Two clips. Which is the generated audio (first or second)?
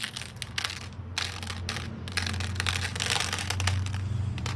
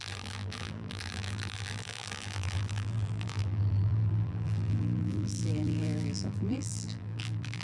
second